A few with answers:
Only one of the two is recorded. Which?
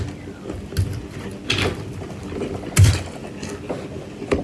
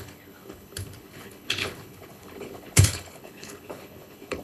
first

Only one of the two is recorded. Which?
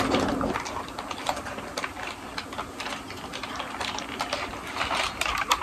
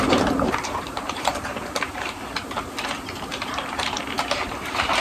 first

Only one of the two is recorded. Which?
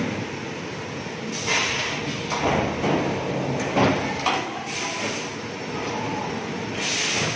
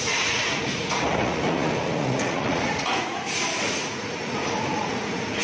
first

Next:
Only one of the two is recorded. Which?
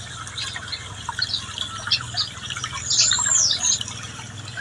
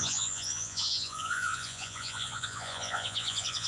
first